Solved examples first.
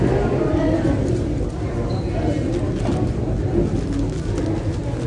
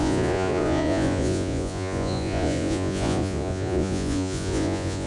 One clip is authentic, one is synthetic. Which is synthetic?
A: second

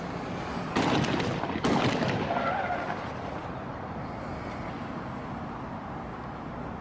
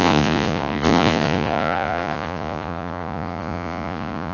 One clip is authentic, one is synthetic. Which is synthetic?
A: second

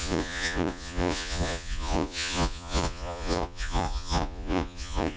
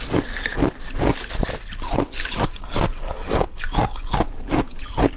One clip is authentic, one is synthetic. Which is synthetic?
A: first